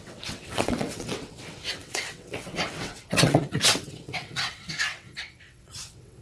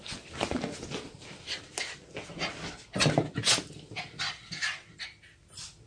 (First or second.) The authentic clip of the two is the second